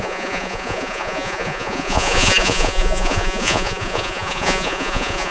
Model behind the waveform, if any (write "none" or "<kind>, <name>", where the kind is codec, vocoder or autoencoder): vocoder, Vocos